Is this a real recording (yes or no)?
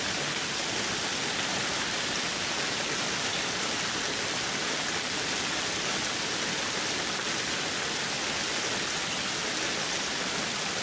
yes